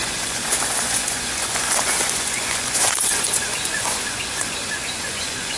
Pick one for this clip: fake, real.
fake